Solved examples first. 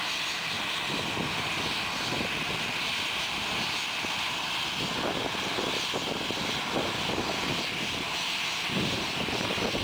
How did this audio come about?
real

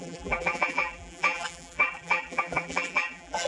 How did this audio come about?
fake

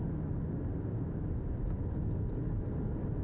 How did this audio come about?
real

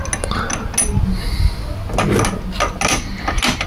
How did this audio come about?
real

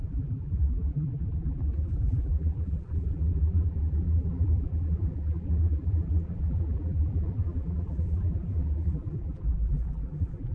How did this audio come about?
fake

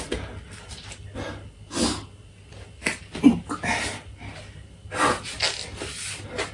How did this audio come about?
real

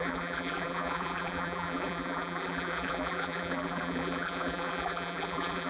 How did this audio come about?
fake